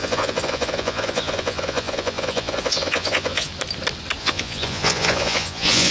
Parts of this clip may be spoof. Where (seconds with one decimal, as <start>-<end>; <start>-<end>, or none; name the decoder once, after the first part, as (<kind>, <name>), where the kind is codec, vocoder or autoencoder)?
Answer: 0.0-3.5 (vocoder, Vocos); 4.2-5.9